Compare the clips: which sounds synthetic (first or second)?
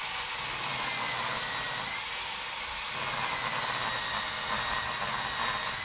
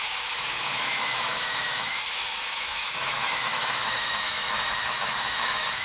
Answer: second